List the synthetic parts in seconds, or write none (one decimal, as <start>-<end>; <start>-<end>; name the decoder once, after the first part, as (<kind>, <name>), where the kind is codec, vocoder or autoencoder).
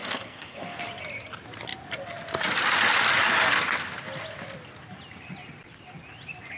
0.0-0.8 (codec, SNAC)